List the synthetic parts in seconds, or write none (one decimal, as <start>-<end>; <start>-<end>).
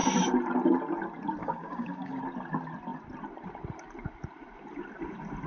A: 1.4-2.2